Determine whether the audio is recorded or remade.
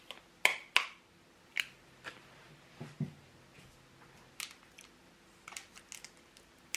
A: recorded